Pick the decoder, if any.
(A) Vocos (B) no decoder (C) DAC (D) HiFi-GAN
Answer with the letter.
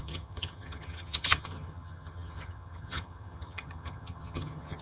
D